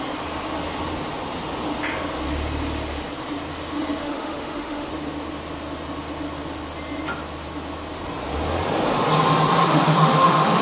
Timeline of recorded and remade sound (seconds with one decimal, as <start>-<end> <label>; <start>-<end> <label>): 0.0-4.0 recorded; 4.0-4.9 remade; 4.9-9.6 recorded; 9.6-10.6 remade